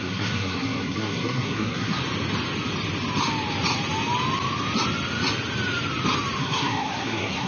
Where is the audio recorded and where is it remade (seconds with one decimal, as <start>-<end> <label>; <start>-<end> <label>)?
0.0-2.0 remade; 2.0-6.4 recorded; 6.4-7.5 remade